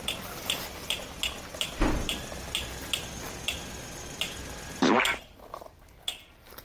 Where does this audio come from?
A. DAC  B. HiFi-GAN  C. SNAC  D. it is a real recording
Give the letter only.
D